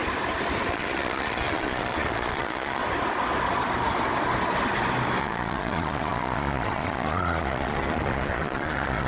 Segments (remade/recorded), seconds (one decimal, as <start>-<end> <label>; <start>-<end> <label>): 0.0-0.7 recorded; 0.7-2.8 remade; 2.8-5.2 recorded; 5.2-9.1 remade